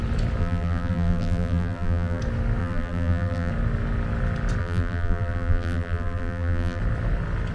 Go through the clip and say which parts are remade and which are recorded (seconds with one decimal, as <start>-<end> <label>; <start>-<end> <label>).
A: 0.0-0.4 recorded; 0.4-2.2 remade; 2.2-2.6 recorded; 2.6-3.5 remade; 3.5-4.6 recorded; 4.6-6.8 remade; 6.8-7.5 recorded